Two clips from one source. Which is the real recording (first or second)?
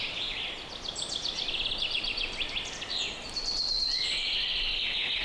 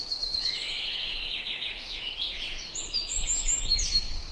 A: first